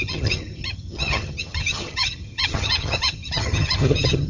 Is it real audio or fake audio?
fake